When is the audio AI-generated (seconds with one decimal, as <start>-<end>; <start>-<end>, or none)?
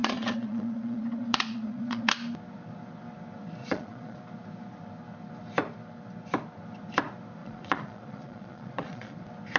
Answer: 0.0-2.1; 3.6-4.2; 7.4-9.2